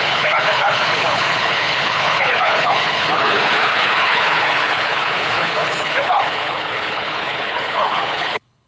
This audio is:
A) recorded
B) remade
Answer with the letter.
B